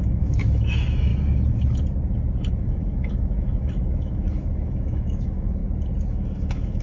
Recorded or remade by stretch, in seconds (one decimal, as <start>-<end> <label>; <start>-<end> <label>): 0.0-1.1 remade; 1.1-2.6 recorded; 2.6-5.6 remade; 5.6-6.1 recorded; 6.1-6.8 remade

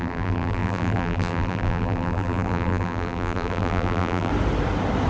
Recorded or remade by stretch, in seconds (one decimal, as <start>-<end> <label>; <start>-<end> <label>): 0.0-4.3 remade; 4.3-5.1 recorded

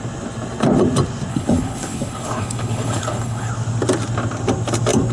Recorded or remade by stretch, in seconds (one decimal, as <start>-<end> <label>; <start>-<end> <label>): 0.0-1.3 recorded; 1.3-3.5 remade; 3.5-5.1 recorded

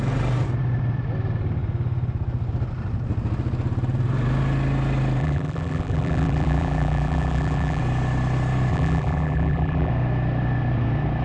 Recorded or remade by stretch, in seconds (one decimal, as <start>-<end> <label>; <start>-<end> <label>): 0.0-5.2 recorded; 5.2-7.8 remade; 7.8-8.7 recorded; 8.7-9.9 remade; 9.9-11.2 recorded

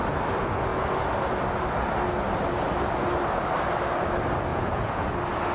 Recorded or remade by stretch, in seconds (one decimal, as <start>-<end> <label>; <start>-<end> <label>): 0.0-4.5 recorded; 4.5-5.1 remade; 5.1-5.5 recorded

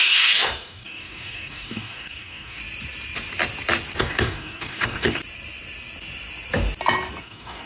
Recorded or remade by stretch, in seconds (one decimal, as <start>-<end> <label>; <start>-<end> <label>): 0.0-2.6 remade; 2.6-4.0 recorded; 4.0-5.2 remade; 5.2-7.2 recorded; 7.2-7.7 remade

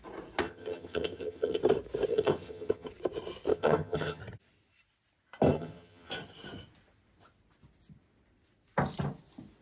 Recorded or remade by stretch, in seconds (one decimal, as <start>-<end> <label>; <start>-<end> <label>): 0.0-0.4 recorded; 0.4-1.6 remade; 1.6-2.1 recorded; 2.1-2.9 remade; 2.9-3.5 recorded; 3.5-4.2 remade; 4.2-5.5 recorded; 5.5-6.1 remade; 6.1-9.6 recorded